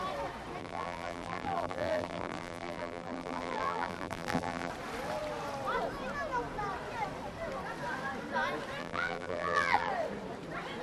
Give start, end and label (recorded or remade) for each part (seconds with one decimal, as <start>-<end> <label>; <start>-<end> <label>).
0.0-0.6 recorded; 0.6-4.7 remade; 4.7-8.8 recorded; 8.8-9.9 remade; 9.9-10.8 recorded